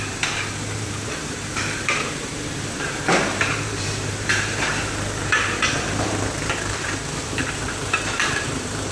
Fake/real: fake